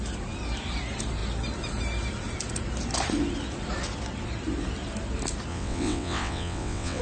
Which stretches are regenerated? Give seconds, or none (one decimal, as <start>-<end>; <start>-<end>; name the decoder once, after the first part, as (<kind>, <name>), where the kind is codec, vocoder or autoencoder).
5.5-7.0 (vocoder, WaveNeXt)